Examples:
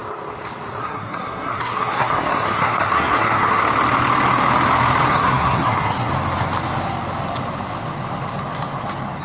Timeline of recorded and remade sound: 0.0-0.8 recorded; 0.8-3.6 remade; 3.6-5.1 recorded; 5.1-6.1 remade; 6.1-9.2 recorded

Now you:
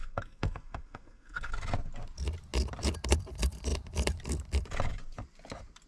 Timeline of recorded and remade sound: 0.0-1.5 remade; 1.5-5.9 recorded

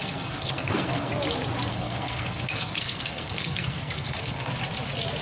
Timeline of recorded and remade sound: 0.0-1.1 remade; 1.1-1.7 recorded; 1.7-4.5 remade; 4.5-5.2 recorded

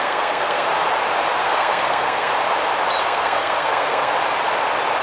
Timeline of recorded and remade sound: 0.0-0.7 remade; 0.7-1.4 recorded; 1.4-2.3 remade; 2.3-3.0 recorded; 3.0-4.1 remade; 4.1-5.0 recorded